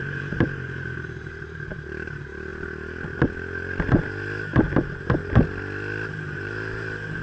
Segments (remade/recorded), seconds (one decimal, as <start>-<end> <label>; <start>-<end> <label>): 0.0-2.5 remade; 2.5-6.1 recorded; 6.1-7.2 remade